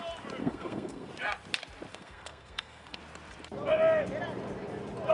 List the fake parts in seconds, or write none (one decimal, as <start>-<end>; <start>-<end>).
0.4-1.1; 1.9-3.0